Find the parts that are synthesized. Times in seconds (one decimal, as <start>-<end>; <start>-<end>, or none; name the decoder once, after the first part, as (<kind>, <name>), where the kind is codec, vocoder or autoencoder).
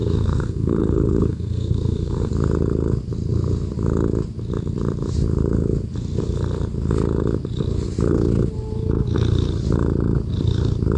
0.0-2.3 (codec, SNAC)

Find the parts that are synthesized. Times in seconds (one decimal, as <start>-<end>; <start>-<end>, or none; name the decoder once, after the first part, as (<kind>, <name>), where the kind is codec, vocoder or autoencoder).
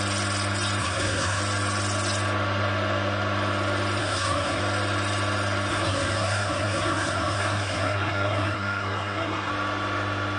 0.8-1.4 (codec, SNAC); 4.0-4.6; 5.7-9.5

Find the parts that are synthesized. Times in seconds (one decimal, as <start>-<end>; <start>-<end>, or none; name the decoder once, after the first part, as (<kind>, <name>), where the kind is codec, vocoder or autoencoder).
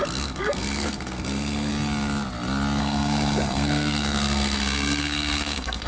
0.0-1.7 (codec, SNAC); 2.8-5.9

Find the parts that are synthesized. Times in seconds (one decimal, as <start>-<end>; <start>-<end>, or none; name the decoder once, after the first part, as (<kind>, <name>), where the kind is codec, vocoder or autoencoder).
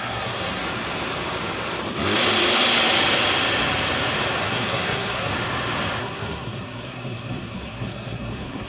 0.0-0.6 (codec, SNAC); 4.4-5.3; 6.0-8.7